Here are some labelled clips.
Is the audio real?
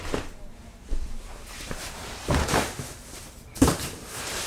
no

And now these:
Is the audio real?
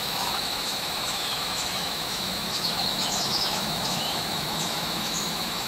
no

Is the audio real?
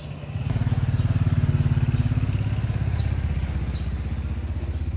yes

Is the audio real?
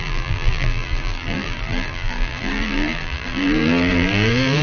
no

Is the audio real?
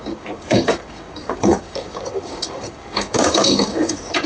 no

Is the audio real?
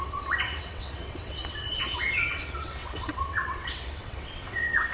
no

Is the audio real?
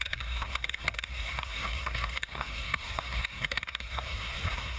no